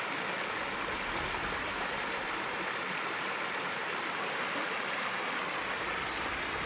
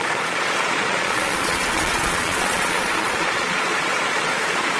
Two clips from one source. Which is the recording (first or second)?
first